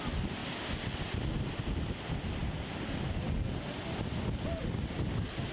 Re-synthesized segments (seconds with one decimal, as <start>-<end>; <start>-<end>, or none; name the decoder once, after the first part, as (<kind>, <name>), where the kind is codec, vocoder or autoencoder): none